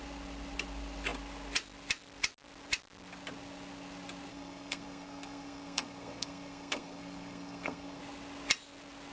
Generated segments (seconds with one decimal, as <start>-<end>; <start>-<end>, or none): 4.3-8.0